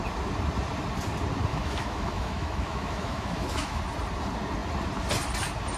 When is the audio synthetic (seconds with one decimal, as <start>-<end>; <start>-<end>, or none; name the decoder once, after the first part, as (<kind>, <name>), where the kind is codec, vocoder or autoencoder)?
1.5-3.8 (autoencoder, DAC-VAE)